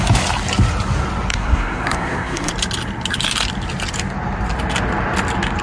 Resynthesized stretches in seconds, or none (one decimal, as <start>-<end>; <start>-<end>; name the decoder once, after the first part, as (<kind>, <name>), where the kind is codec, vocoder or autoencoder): 1.3-2.5 (codec, SNAC)